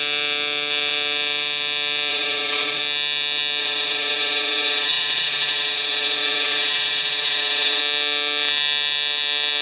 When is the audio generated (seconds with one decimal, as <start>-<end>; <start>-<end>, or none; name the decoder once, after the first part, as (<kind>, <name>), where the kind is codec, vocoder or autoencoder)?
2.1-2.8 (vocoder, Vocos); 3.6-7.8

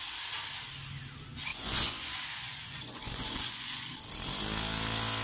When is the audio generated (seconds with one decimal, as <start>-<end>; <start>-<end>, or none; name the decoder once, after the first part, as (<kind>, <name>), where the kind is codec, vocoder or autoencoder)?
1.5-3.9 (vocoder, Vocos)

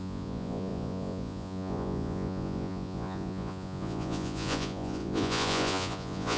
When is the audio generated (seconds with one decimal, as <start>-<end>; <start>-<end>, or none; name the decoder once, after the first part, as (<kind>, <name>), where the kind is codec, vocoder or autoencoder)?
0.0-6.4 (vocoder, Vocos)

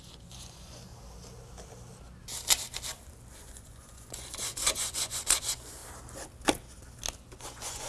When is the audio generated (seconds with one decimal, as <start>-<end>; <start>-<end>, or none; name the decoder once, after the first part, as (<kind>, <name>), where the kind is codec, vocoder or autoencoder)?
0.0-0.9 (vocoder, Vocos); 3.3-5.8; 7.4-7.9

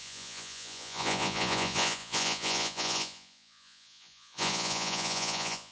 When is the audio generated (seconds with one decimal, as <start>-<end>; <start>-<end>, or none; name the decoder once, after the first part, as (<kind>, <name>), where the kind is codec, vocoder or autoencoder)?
0.0-5.7 (vocoder, Vocos)

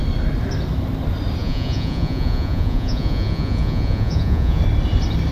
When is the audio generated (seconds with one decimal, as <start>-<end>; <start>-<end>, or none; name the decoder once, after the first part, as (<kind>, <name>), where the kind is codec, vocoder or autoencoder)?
1.4-4.6 (vocoder, Vocos)

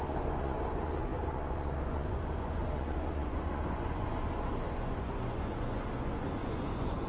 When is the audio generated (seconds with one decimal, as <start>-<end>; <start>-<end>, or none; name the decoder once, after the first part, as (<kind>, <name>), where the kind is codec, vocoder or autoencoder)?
0.0-7.1 (vocoder, Vocos)

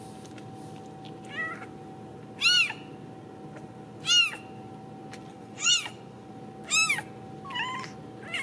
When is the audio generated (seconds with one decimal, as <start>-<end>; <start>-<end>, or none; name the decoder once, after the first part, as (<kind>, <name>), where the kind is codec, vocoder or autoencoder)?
5.3-6.3 (vocoder, Vocos)